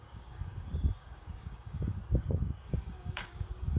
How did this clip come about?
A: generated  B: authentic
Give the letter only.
A